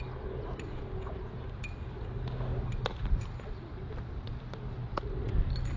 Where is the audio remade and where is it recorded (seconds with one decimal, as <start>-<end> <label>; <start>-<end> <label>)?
0.0-5.8 recorded